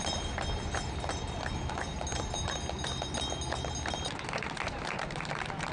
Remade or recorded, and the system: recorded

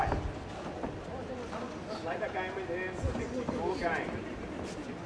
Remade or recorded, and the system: recorded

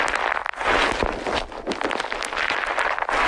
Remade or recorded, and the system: recorded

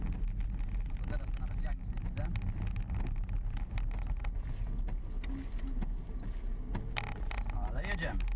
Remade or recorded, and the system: recorded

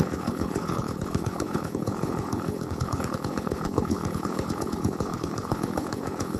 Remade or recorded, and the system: remade, codec, HILCodec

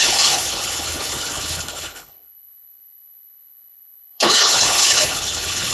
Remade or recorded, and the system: remade, codec, HILCodec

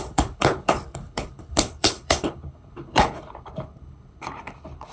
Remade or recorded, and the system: remade, codec, HILCodec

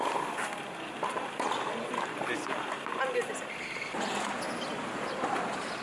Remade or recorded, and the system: recorded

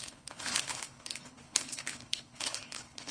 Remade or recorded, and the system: remade, codec, HILCodec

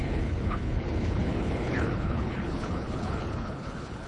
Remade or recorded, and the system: remade, codec, HILCodec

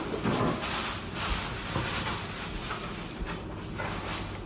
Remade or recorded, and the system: recorded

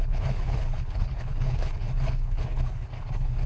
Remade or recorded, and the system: remade, codec, HILCodec